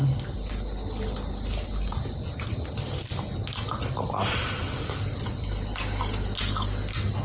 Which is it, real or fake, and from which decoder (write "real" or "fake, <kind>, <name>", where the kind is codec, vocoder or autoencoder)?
real